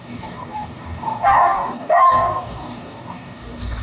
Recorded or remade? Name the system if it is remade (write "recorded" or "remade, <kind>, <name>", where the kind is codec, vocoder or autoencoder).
remade, codec, DAC